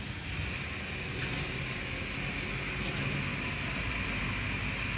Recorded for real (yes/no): yes